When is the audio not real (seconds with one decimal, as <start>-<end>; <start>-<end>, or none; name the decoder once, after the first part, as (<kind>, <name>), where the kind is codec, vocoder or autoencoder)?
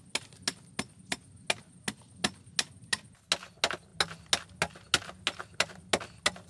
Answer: none